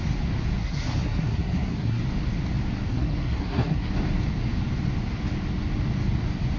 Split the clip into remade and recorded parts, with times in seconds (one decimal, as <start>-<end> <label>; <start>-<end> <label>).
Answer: 0.0-0.6 recorded; 0.6-2.0 remade; 2.0-2.9 recorded; 2.9-3.9 remade; 3.9-6.6 recorded